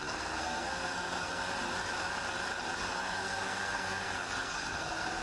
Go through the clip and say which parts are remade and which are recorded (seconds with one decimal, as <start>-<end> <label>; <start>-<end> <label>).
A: 0.0-1.4 remade; 1.4-2.9 recorded; 2.9-5.2 remade